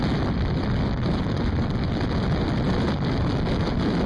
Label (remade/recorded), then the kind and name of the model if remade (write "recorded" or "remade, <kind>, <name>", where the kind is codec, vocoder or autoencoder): recorded